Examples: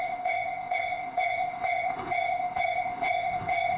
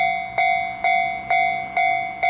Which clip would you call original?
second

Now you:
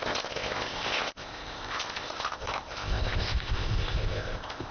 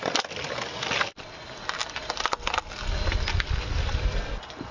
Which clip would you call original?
second